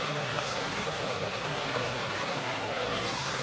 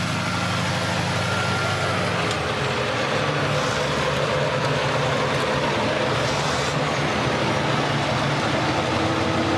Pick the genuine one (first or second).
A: second